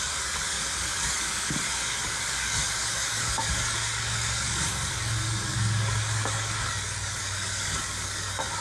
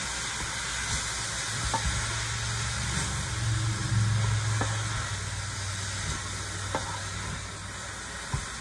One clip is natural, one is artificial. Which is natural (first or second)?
second